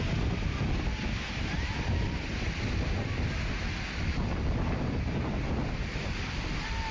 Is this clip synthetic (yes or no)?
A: no